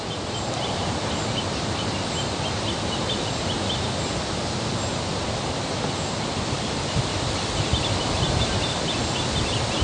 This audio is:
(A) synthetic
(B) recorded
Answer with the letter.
B